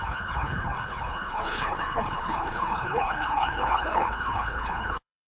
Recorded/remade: remade